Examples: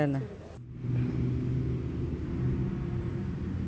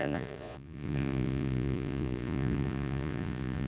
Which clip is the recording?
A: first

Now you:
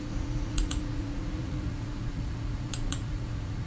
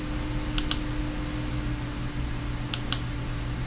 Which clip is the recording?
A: second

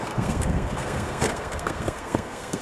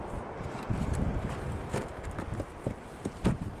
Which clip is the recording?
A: second